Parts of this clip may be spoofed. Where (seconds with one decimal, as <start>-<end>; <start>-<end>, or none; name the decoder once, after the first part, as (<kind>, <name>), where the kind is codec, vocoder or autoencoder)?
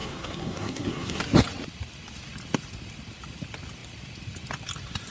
0.0-1.2 (codec, SNAC)